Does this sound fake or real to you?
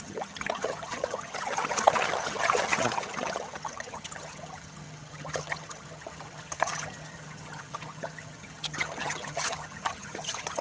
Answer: fake